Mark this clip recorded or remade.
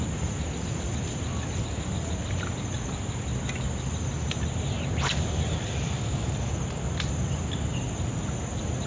recorded